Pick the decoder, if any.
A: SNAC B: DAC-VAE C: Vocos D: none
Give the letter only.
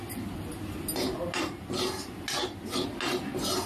D